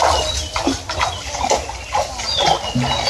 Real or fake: real